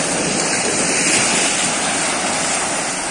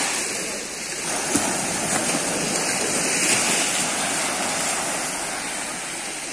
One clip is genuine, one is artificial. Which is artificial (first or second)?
first